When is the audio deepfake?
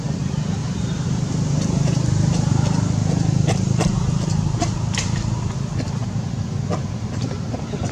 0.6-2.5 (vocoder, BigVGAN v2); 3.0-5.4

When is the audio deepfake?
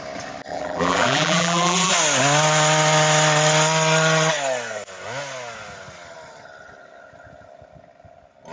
0.5-1.9 (vocoder, BigVGAN v2)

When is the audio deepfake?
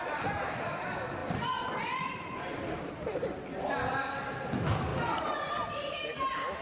4.9-5.5 (vocoder, BigVGAN v2)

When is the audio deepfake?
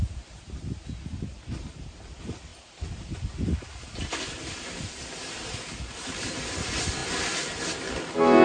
7.0-8.0 (vocoder, BigVGAN v2)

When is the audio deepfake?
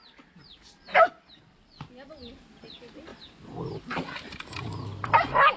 none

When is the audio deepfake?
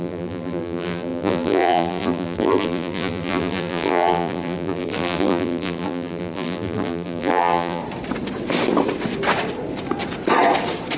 0.0-7.8 (vocoder, BigVGAN v2)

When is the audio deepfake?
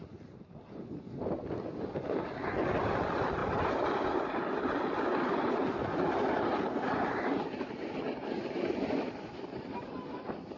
none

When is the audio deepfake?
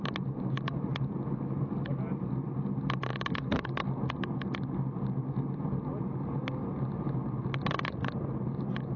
none